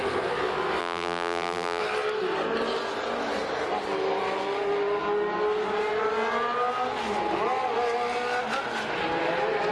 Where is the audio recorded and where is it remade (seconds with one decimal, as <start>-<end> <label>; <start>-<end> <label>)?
0.0-0.8 recorded; 0.8-1.8 remade; 1.8-9.7 recorded